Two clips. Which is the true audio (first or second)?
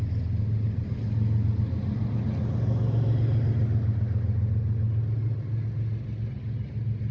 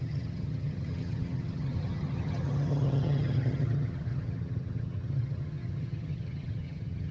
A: first